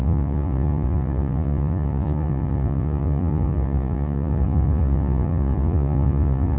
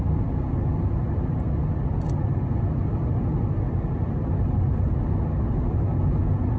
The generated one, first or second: first